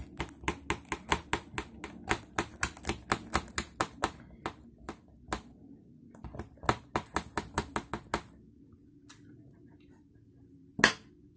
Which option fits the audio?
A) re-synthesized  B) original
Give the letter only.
B